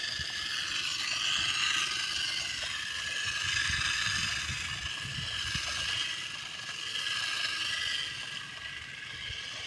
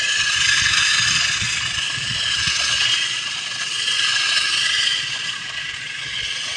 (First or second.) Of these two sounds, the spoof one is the second